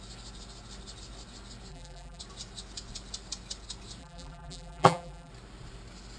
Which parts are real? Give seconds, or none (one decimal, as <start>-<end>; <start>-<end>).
0.0-1.7; 2.2-4.0; 5.3-6.2